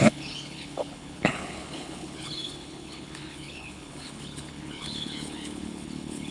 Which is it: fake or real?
fake